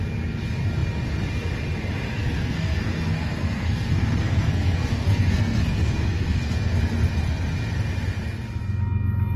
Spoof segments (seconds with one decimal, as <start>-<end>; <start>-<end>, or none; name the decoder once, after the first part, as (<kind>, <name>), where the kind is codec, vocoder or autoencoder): 2.2-6.8 (codec, SNAC)